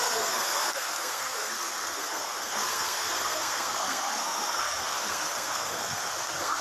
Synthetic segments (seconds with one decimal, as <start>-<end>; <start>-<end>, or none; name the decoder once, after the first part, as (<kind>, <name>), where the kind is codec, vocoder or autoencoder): 0.0-6.6 (codec, SNAC)

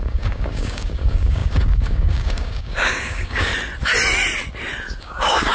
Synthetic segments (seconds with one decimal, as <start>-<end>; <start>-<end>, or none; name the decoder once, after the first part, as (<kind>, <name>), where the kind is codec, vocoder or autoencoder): 0.0-3.5 (codec, DAC); 5.0-5.5

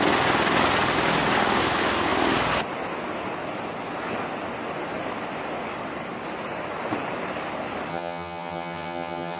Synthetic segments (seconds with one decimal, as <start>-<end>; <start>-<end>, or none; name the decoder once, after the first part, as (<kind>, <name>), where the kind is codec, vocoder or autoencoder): 7.9-9.4 (vocoder, HiFi-GAN)

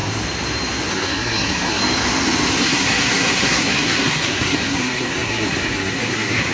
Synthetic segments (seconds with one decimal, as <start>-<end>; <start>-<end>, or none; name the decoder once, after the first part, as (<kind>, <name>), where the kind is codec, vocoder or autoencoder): 0.9-1.8 (codec, SNAC); 2.6-6.5

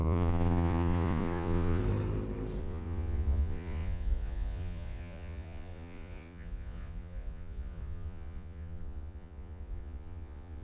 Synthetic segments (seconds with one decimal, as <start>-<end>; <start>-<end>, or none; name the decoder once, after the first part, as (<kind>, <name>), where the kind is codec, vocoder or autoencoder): 0.0-1.8 (vocoder, Vocos); 2.6-10.6

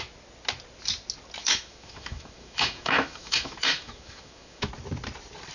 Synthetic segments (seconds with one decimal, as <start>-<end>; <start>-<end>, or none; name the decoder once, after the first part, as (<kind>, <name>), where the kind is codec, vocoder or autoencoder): 1.4-4.7 (autoencoder, DAC-VAE)

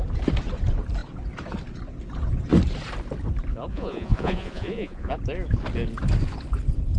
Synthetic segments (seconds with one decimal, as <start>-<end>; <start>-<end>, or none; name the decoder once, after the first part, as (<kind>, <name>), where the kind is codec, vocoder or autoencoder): 3.7-5.1 (vocoder, Vocos)

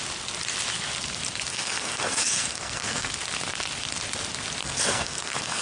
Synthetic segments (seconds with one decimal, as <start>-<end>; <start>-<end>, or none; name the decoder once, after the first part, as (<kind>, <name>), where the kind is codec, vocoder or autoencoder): 1.5-3.1 (codec, SNAC); 4.6-5.6